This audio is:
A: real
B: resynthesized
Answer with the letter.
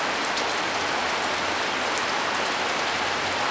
A